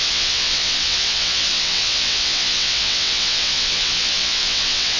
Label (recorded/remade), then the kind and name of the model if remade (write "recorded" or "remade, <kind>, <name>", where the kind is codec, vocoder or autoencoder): remade, vocoder, WaveNeXt